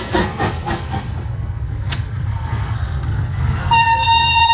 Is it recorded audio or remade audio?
remade